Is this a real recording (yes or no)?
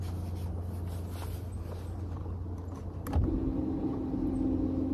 yes